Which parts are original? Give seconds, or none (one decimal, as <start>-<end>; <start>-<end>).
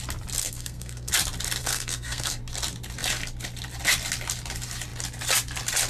0.0-0.4; 1.1-1.6; 2.4-5.9